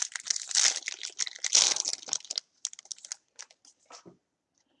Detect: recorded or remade recorded